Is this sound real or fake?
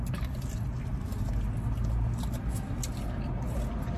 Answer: real